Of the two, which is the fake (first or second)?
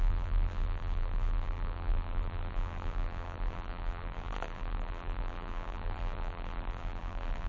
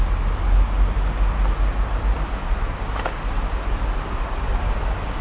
first